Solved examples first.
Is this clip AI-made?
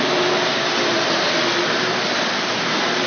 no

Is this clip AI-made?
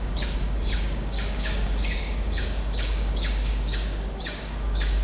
yes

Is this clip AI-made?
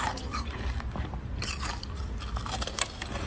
no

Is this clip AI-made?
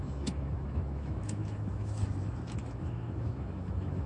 yes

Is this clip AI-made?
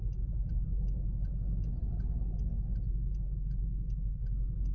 no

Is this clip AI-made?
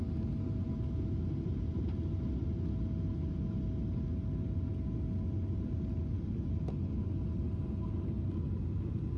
no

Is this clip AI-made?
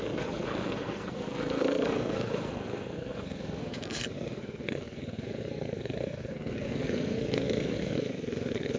yes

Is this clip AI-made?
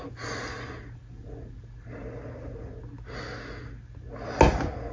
no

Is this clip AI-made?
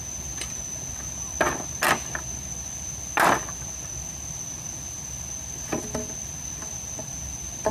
no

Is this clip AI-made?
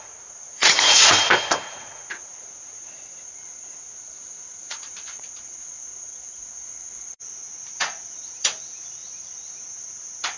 yes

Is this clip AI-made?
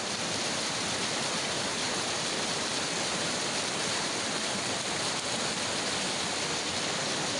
yes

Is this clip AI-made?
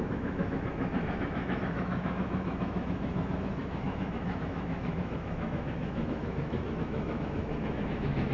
yes